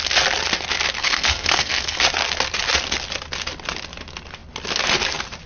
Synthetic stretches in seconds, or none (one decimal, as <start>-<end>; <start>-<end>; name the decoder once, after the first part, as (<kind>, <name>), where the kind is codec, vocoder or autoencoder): 1.0-2.0 (codec, SNAC)

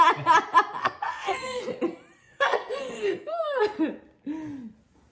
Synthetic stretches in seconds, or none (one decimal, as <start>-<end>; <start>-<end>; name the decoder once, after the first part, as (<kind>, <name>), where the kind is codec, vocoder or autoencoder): 0.8-1.6 (codec, SNAC); 2.2-3.6